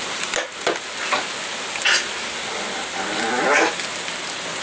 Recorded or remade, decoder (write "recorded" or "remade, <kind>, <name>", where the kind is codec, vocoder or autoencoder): recorded